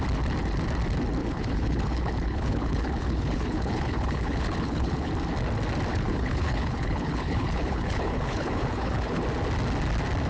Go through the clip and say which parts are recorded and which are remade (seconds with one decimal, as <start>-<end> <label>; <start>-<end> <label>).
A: 0.0-1.2 recorded; 1.2-5.1 remade; 5.1-5.9 recorded; 5.9-9.2 remade; 9.2-10.3 recorded